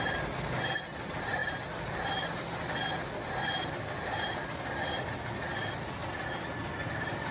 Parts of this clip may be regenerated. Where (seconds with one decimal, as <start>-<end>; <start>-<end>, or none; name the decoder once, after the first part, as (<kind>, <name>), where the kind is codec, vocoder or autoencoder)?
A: 1.4-3.1 (vocoder, BigVGAN v2)